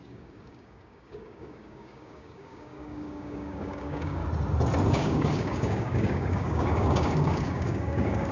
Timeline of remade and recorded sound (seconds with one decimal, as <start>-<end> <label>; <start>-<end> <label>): 0.0-4.2 remade; 4.2-4.9 recorded; 4.9-8.3 remade